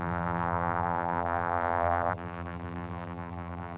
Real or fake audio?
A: fake